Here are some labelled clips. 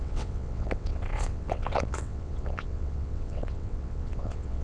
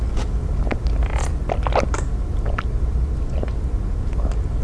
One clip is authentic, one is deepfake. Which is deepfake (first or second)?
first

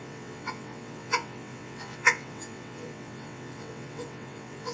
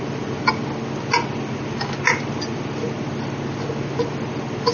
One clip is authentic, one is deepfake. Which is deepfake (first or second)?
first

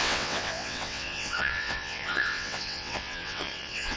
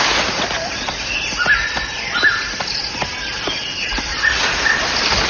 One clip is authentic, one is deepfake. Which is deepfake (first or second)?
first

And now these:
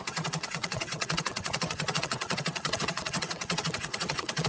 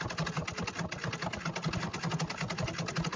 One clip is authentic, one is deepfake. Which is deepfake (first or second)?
first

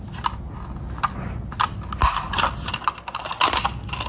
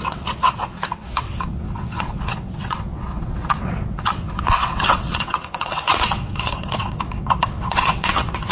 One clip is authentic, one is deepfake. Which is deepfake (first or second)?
second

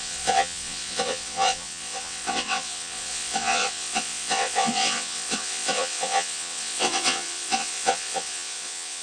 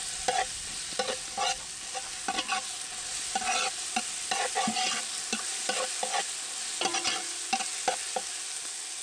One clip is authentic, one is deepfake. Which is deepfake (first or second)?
first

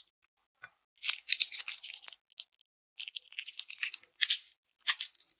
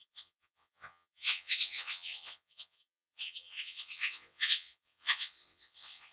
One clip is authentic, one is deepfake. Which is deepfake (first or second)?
second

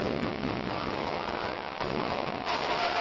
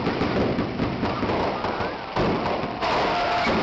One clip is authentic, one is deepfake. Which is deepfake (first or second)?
first